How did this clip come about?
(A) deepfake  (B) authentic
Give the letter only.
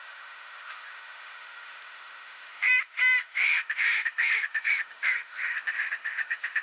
A